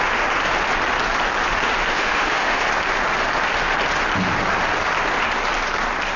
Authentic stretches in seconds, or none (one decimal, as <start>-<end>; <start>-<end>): 0.0-1.9; 2.6-6.2